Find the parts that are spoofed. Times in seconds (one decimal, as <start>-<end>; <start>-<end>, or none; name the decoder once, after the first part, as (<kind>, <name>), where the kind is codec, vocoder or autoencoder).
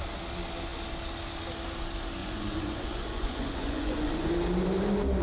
2.2-4.3 (vocoder, Vocos)